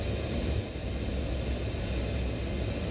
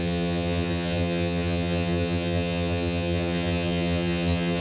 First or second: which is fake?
second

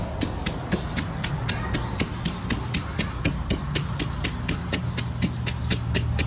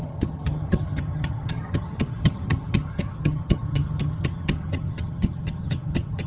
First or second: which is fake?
second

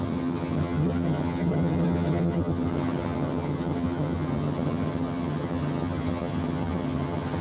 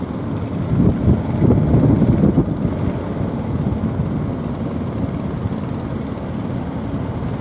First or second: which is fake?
first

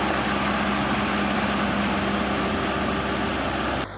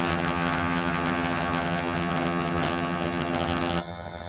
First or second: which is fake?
second